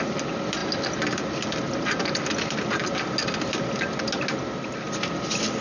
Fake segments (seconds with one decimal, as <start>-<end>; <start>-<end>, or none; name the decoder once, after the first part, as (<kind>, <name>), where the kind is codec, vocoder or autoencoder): none